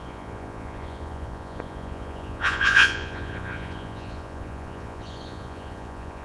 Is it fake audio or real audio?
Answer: fake